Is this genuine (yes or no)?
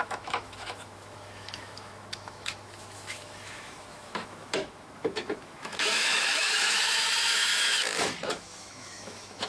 no